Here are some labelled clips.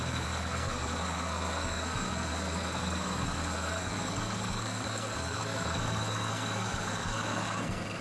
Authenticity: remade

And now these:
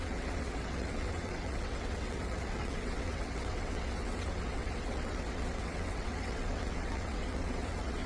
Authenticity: remade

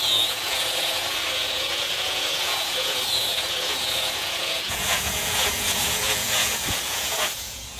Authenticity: remade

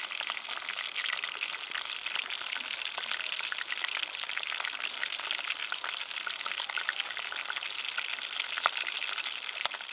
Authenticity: recorded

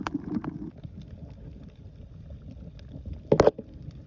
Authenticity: recorded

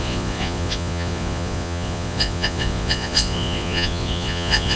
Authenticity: remade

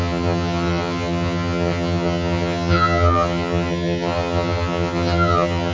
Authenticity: remade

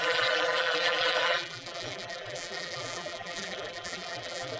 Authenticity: remade